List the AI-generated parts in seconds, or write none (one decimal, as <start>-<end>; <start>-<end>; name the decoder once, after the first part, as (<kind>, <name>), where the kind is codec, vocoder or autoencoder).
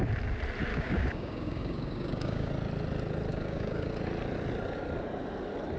0.7-2.5 (codec, DAC); 3.3-3.9